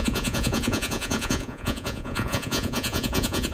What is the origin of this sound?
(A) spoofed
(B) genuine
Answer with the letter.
A